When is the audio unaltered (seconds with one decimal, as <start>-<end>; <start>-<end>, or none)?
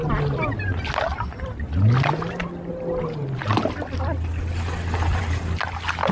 0.0-6.1